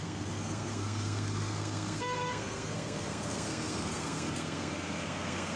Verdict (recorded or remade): remade